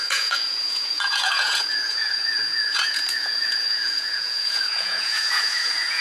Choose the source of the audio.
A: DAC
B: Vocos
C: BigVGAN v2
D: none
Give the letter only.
B